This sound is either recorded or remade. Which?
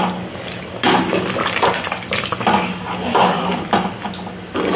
recorded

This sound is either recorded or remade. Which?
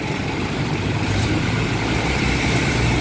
remade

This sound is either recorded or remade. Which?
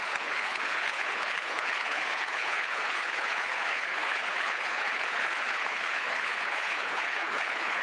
remade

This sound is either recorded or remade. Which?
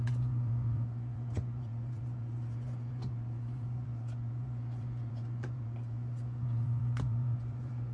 remade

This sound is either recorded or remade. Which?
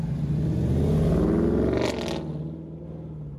recorded